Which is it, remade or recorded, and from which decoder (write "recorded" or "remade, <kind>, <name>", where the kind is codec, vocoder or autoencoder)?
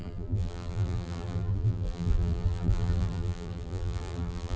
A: remade, vocoder, BigVGAN v2